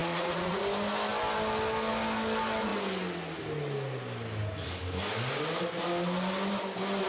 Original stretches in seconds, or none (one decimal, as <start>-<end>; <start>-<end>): 0.6-7.1